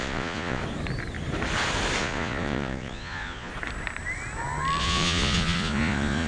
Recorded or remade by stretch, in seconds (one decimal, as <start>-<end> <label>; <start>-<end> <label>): 0.0-0.6 remade; 0.6-2.0 recorded; 2.0-3.5 remade; 3.5-4.8 recorded; 4.8-6.3 remade